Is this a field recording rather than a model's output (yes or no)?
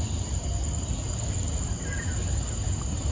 yes